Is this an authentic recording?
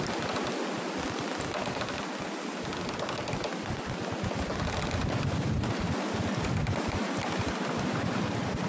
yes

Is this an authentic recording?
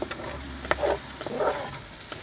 yes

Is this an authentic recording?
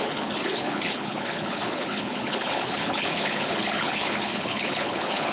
no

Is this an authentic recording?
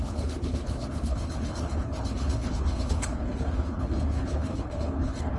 no